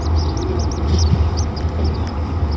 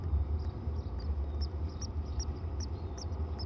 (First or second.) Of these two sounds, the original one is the first